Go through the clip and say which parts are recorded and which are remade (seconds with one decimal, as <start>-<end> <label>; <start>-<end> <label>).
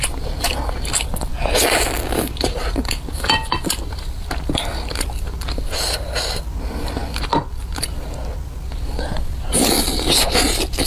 0.0-10.9 recorded